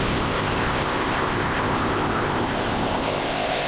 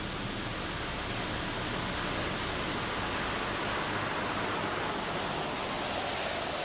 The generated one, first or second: first